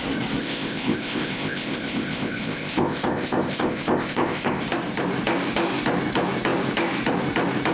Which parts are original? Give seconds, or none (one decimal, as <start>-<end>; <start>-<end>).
0.0-0.4; 4.6-7.7